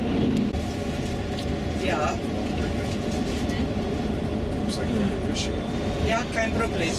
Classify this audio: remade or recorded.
recorded